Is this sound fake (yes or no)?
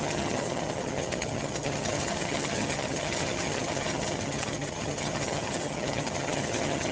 yes